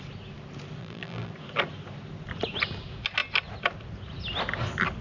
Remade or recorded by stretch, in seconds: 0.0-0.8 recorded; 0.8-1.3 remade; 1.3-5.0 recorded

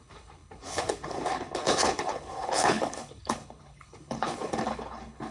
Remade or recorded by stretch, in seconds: 0.0-5.3 remade